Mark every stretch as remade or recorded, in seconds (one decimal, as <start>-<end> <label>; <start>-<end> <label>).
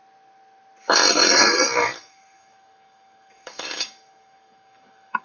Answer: 0.0-1.1 recorded; 1.1-5.2 remade